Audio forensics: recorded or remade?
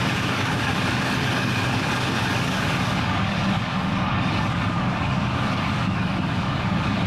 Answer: remade